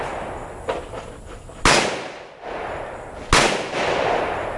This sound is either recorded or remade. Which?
recorded